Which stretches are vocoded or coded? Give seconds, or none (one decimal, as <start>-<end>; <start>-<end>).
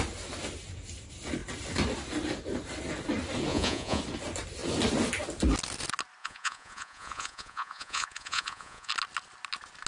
3.5-4.0; 6.2-8.9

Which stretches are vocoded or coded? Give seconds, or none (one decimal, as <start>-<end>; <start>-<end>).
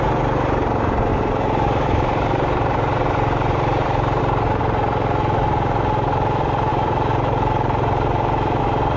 1.1-4.2; 6.7-8.6